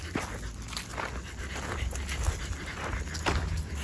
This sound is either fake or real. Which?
real